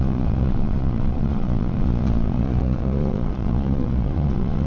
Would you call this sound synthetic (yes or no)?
yes